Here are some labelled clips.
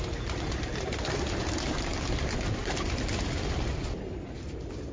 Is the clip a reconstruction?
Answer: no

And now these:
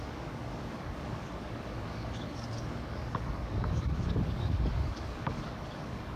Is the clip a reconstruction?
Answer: yes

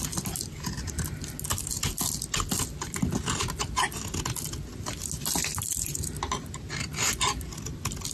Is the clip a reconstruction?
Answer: no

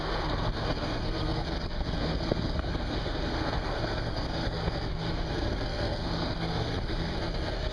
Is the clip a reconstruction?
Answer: yes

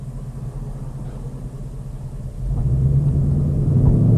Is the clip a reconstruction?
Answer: no